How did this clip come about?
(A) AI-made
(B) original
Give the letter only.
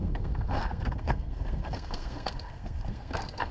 A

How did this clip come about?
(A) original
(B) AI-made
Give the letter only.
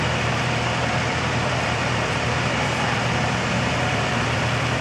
B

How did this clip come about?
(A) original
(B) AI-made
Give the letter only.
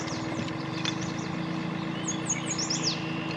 A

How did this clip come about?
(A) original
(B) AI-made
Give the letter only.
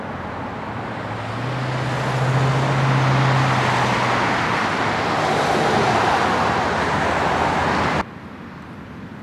A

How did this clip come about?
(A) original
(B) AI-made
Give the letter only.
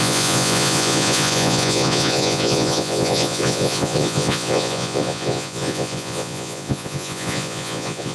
B